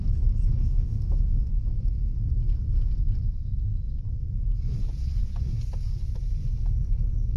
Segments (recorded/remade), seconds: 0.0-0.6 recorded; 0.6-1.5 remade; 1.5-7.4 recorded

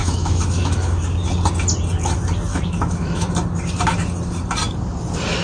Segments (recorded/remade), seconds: 0.0-1.0 remade; 1.0-2.5 recorded; 2.5-3.3 remade; 3.3-5.4 recorded